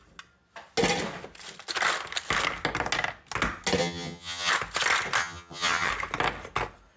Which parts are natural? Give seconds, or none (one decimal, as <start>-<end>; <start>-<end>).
0.0-3.8; 4.5-5.2; 5.9-7.0